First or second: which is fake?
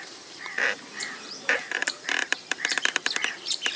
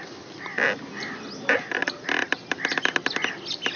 first